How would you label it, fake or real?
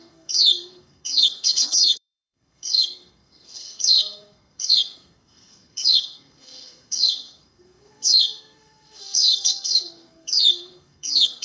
fake